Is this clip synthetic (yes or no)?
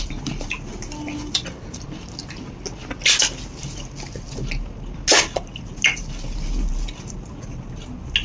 no